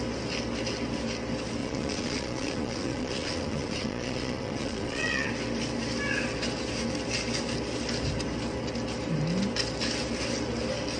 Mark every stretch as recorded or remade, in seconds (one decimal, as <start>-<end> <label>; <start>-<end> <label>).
0.0-1.6 recorded; 1.6-5.3 remade; 5.3-11.0 recorded